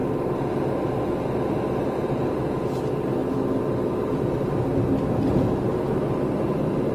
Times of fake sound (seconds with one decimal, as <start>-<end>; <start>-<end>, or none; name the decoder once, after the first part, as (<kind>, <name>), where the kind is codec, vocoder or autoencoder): 1.6-3.2 (vocoder, BigVGAN v2); 4.6-6.9